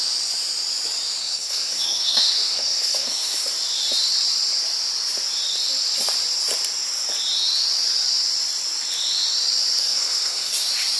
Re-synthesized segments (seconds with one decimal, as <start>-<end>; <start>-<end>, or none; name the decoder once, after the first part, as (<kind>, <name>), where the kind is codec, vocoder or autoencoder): 1.2-3.5 (codec, SNAC); 9.8-10.5